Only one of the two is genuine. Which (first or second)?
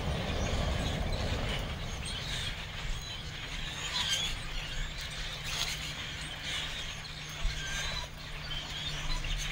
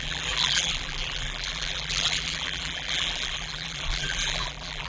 first